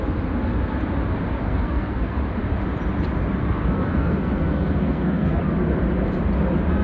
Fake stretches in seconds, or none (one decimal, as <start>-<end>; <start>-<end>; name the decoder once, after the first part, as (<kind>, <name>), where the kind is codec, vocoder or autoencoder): 1.4-2.2 (codec, SNAC); 3.4-5.4